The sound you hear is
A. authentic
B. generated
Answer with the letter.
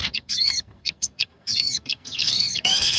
B